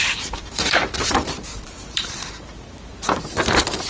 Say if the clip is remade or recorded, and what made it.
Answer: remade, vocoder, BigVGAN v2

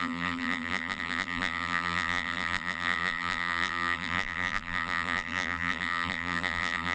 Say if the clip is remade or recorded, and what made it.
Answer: remade, vocoder, BigVGAN v2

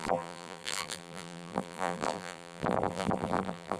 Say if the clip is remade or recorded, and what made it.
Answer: remade, vocoder, BigVGAN v2